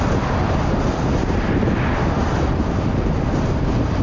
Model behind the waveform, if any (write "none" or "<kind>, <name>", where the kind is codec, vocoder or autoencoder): none